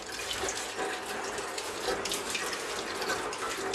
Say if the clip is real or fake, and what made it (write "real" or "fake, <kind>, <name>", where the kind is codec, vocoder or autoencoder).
real